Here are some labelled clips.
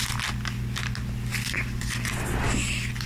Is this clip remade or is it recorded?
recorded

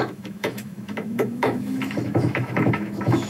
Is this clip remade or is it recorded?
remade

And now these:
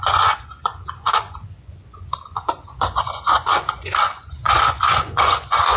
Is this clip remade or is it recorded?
remade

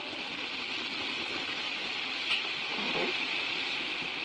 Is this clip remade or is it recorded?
recorded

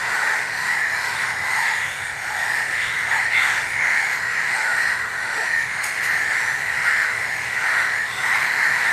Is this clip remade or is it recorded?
remade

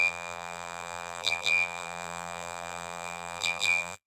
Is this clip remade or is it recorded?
remade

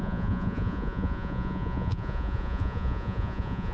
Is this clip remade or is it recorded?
remade